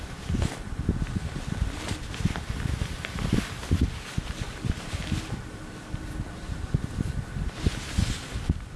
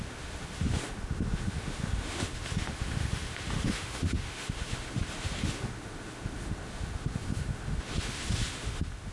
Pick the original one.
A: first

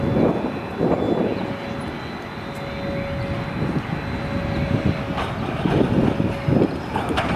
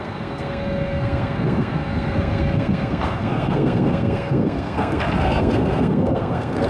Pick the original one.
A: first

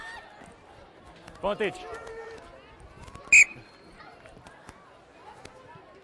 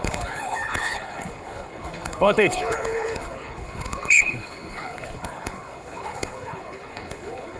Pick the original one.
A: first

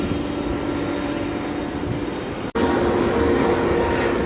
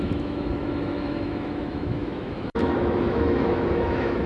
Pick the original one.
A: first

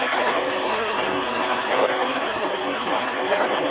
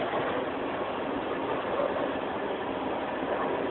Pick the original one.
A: second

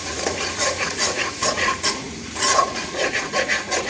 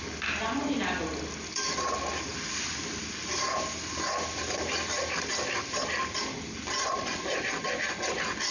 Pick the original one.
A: second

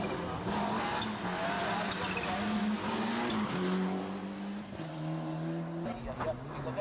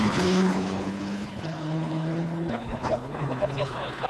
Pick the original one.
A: first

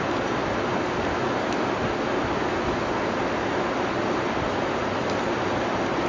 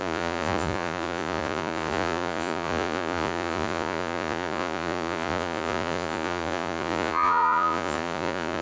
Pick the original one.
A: first